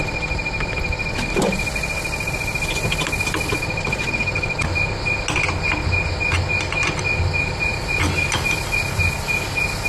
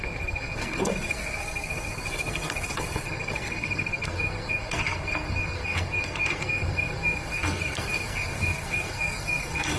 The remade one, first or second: second